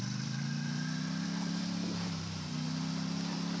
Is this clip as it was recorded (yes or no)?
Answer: no